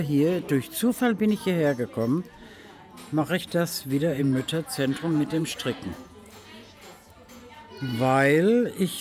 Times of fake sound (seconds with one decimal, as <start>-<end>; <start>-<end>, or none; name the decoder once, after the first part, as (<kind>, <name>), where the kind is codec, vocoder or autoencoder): 2.4-7.4 (vocoder, Vocos)